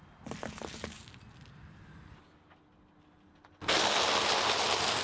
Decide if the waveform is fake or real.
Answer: real